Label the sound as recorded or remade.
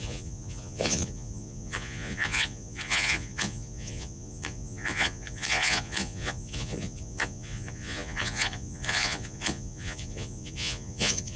remade